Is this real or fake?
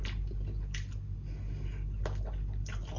real